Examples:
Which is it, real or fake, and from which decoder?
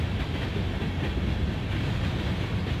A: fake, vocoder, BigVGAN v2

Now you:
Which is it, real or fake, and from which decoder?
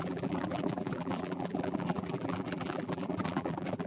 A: fake, vocoder, BigVGAN v2